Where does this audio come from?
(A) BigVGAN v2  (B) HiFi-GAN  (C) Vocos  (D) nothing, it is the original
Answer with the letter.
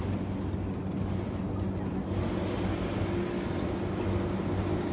D